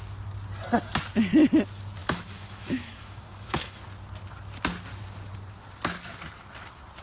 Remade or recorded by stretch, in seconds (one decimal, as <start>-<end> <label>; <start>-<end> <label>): 0.0-2.0 recorded; 2.0-3.8 remade; 3.8-7.0 recorded